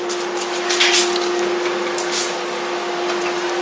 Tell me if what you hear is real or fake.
real